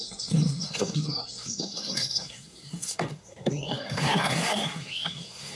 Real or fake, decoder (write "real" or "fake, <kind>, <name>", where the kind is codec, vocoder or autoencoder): fake, codec, SNAC